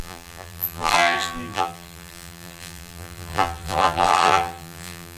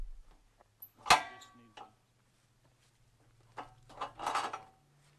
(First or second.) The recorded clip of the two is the second